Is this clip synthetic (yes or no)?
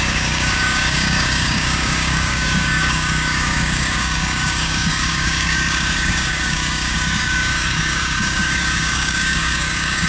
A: yes